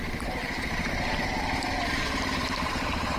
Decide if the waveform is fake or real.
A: fake